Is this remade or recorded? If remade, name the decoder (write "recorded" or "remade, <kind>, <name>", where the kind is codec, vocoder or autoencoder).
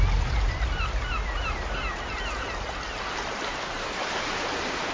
recorded